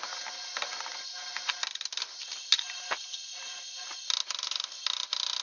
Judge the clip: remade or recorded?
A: recorded